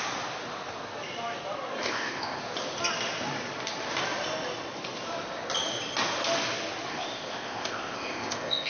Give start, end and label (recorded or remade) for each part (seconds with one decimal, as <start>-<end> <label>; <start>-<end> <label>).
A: 0.0-1.8 recorded; 1.8-2.4 remade; 2.4-6.9 recorded; 6.9-8.7 remade